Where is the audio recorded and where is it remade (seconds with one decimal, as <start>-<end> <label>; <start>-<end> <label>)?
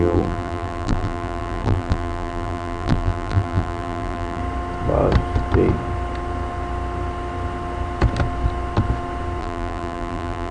0.0-4.4 remade; 4.4-9.4 recorded; 9.4-10.5 remade